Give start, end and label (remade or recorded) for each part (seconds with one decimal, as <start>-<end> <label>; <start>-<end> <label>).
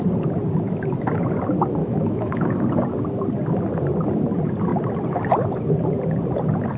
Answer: 0.0-1.8 recorded; 1.8-2.5 remade; 2.5-6.8 recorded